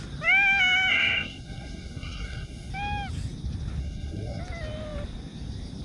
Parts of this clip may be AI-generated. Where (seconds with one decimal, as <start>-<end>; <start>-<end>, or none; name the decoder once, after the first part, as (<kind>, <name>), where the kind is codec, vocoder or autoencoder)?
0.9-2.7 (codec, SNAC); 3.8-4.4